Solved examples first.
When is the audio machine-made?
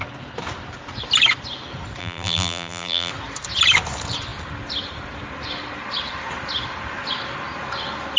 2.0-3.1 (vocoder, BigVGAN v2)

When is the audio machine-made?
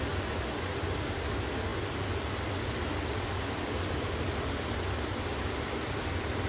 none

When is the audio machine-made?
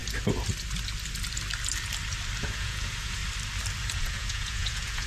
2.4-3.2 (vocoder, Vocos); 4.0-5.1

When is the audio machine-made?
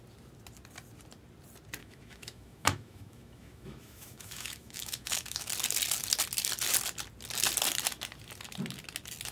1.8-5.5 (autoencoder, DAC-VAE)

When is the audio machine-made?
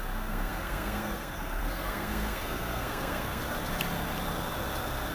0.0-3.4 (codec, SNAC)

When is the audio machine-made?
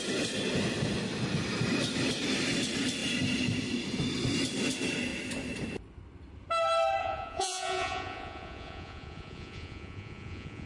7.0-10.7 (vocoder, Vocos)